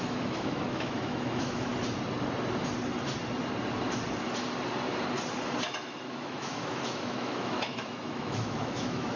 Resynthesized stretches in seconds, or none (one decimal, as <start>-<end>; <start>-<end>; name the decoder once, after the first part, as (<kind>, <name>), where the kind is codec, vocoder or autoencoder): 0.0-1.7 (autoencoder, DAC-VAE); 5.8-9.2